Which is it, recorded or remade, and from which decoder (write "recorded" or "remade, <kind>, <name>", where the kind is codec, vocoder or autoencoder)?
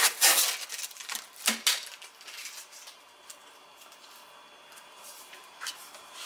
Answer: recorded